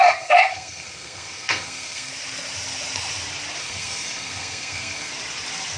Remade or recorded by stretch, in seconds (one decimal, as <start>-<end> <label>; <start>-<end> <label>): 0.0-2.1 remade; 2.1-3.6 recorded; 3.6-5.1 remade; 5.1-5.8 recorded